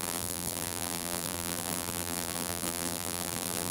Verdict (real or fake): fake